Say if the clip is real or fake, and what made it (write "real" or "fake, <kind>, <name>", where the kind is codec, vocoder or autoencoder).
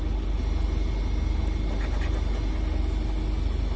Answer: real